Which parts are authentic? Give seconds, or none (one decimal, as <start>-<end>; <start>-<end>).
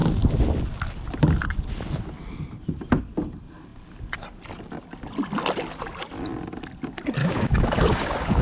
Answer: 0.0-7.2